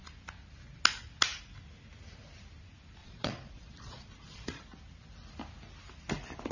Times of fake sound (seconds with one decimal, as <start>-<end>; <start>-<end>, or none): 3.0-4.6